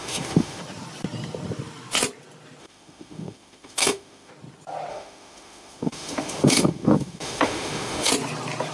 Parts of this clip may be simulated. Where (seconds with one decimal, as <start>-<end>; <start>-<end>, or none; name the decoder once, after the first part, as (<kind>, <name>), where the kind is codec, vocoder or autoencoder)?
0.0-0.6 (autoencoder, DAC-VAE); 2.6-4.3; 4.9-8.1